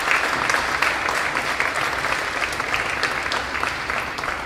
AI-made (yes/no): no